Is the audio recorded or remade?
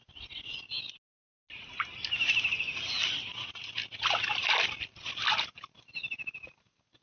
recorded